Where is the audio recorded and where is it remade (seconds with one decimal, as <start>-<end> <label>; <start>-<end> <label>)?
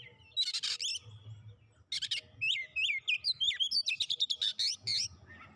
0.0-5.6 recorded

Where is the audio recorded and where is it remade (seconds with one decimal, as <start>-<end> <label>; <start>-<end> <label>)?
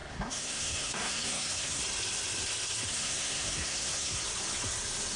0.0-1.8 remade; 1.8-2.9 recorded; 2.9-4.2 remade; 4.2-5.2 recorded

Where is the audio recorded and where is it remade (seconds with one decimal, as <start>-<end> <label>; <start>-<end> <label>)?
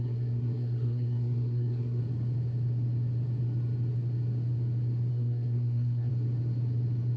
0.0-2.0 remade; 2.0-5.1 recorded; 5.1-6.1 remade; 6.1-7.2 recorded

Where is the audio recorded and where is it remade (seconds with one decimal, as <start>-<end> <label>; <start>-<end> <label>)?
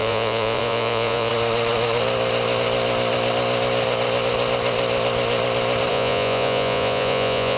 0.0-1.3 remade; 1.3-5.9 recorded; 5.9-7.6 remade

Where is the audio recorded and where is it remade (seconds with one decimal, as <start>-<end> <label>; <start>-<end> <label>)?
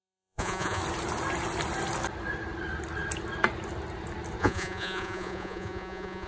0.0-0.8 remade; 0.8-4.4 recorded; 4.4-6.3 remade